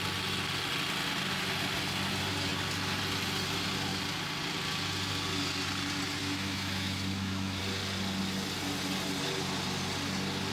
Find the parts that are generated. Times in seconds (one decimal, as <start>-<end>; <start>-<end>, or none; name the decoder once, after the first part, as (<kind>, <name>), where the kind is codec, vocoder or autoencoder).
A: 6.2-7.6 (autoencoder, DAC-VAE)